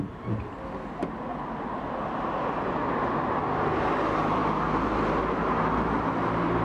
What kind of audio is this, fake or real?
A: real